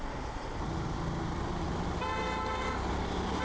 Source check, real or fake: real